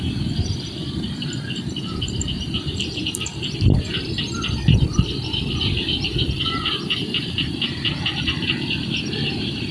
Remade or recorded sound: remade